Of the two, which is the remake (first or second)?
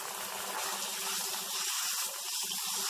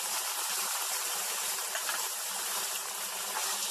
second